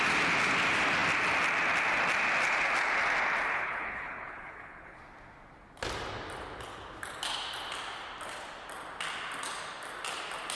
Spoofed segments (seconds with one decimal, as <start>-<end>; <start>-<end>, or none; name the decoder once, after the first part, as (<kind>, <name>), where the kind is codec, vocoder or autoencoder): 3.5-5.0 (codec, HILCodec)